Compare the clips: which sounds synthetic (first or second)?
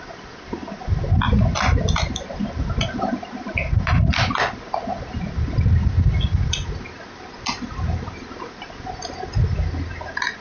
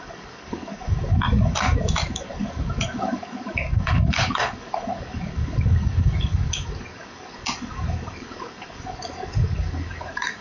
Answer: second